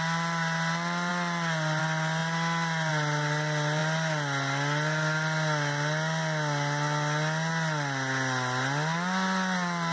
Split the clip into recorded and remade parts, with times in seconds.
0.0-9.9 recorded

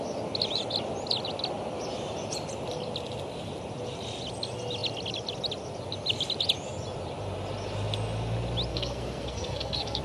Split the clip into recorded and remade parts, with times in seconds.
0.0-8.7 recorded; 8.7-10.0 remade

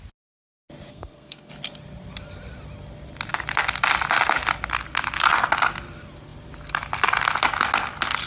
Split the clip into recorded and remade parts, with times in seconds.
0.0-0.9 recorded; 0.9-1.5 remade; 1.5-8.3 recorded

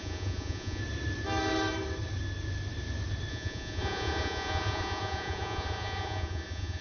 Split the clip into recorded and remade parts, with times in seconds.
0.0-0.8 remade; 0.8-3.3 recorded; 3.3-6.8 remade

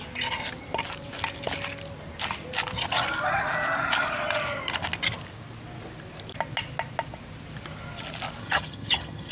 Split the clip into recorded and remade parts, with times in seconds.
0.0-8.4 recorded; 8.4-9.3 remade